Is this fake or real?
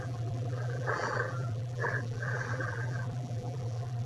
fake